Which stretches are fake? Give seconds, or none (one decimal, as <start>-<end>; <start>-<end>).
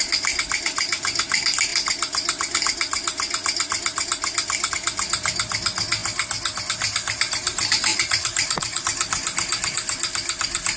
7.9-8.8